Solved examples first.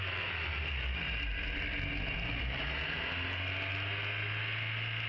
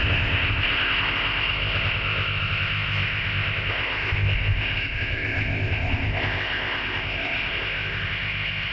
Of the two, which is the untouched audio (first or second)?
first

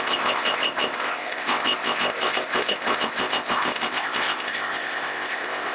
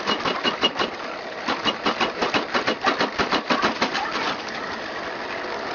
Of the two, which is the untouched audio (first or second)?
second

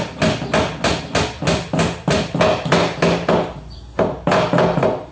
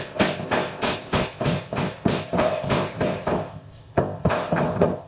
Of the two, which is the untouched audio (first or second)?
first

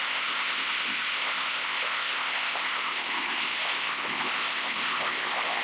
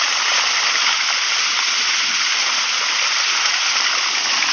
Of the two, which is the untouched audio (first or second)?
second